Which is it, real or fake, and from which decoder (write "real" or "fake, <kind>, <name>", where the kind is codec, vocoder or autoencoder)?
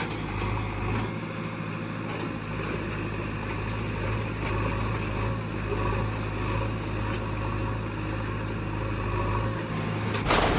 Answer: real